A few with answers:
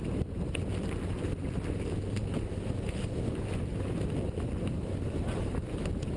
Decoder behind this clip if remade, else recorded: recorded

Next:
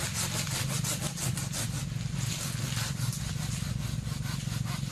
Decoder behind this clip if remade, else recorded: recorded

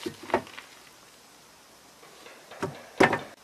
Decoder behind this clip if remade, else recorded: recorded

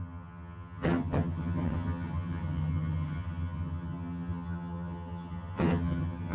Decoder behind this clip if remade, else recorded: remade, vocoder, HiFi-GAN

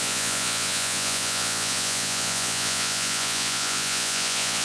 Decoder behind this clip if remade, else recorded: remade, vocoder, Vocos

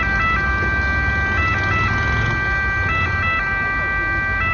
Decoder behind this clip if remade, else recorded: recorded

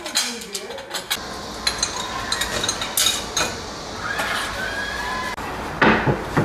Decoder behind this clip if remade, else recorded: recorded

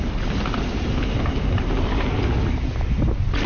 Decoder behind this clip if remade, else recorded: recorded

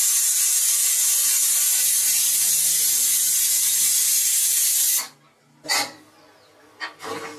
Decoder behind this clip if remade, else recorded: recorded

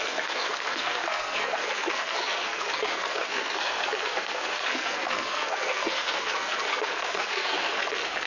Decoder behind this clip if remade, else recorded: remade, codec, SNAC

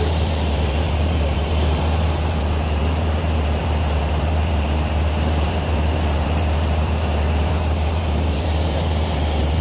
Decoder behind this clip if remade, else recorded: remade, vocoder, BigVGAN v2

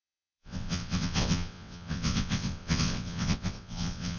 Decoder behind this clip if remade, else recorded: remade, vocoder, WaveNeXt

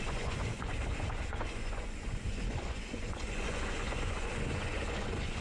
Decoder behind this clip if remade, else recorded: remade, vocoder, Vocos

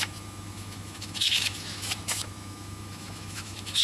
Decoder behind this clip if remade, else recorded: remade, autoencoder, DAC-VAE